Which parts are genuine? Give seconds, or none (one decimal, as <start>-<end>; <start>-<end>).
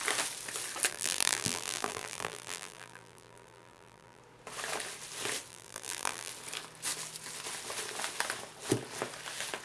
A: 0.0-0.9; 4.2-5.5; 6.3-9.6